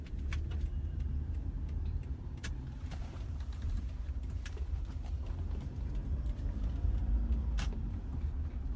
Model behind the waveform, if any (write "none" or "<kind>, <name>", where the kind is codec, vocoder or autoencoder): vocoder, BigVGAN v2